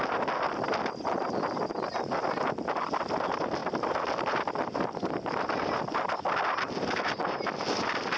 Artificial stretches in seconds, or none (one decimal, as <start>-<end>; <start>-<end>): none